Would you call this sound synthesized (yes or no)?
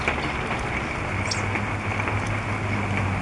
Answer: no